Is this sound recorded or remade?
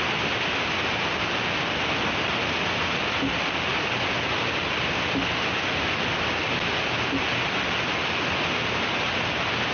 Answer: recorded